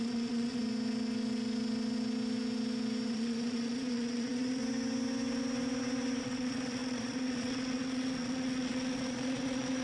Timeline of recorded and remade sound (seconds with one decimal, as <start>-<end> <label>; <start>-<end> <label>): 0.0-0.6 remade; 0.6-3.1 recorded; 3.1-4.6 remade; 4.6-6.2 recorded; 6.2-9.8 remade